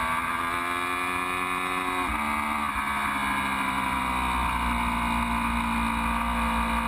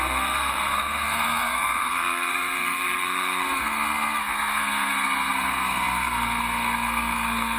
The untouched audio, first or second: first